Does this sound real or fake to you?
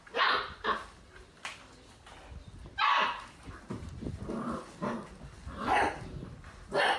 real